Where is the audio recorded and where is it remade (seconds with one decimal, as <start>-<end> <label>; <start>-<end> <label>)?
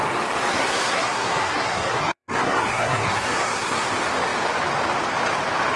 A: 0.0-0.5 recorded; 0.5-3.9 remade; 3.9-5.8 recorded